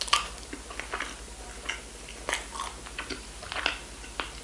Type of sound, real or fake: real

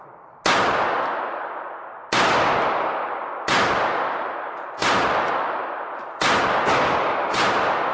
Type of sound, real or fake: real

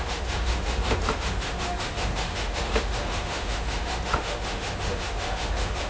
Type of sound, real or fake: fake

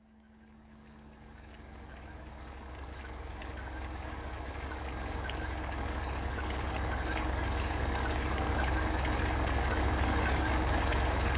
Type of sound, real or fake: fake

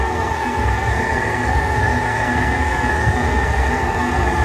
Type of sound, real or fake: fake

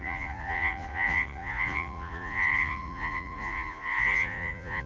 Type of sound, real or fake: fake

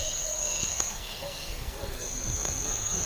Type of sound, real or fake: fake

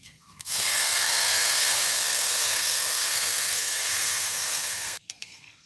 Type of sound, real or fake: fake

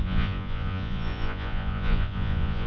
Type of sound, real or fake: fake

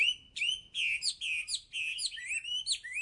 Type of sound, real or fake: real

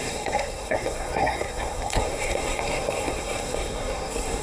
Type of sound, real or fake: fake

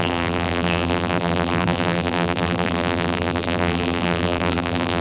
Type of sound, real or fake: fake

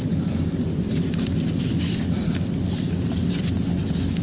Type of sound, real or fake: fake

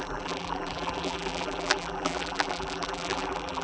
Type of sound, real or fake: fake